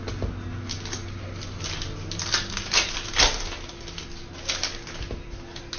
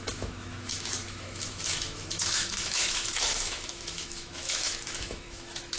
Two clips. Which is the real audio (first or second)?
first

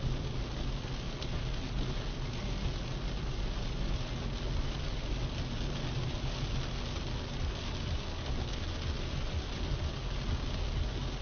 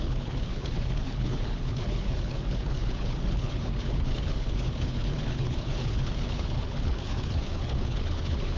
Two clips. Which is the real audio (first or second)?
first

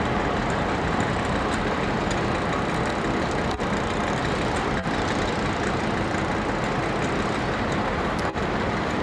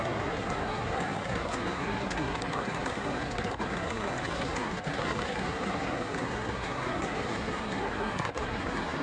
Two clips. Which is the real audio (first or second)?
first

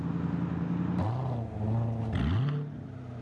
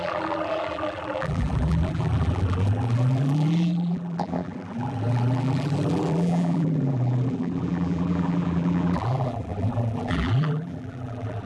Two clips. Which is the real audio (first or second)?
first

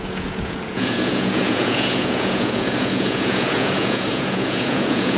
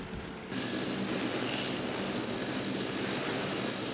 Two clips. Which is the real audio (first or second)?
second